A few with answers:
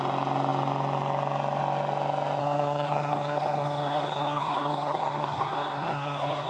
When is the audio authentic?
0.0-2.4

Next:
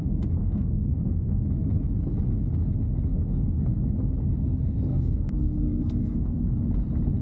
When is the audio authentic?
0.0-0.4; 1.5-3.1; 3.8-4.9; 6.4-7.2

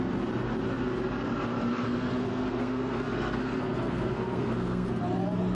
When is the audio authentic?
0.0-1.7; 5.0-5.5

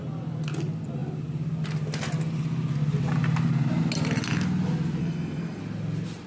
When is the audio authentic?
0.0-5.0; 5.6-6.3

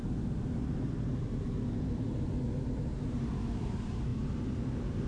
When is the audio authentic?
0.0-5.1

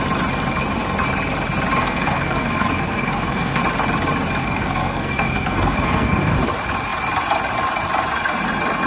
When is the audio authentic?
0.0-1.8; 3.6-4.4; 6.4-8.9